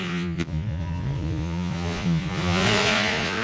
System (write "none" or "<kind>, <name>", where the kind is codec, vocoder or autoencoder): vocoder, Vocos